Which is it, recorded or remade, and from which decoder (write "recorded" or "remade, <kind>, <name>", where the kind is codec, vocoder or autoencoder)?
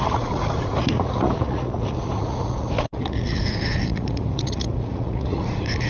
remade, vocoder, Vocos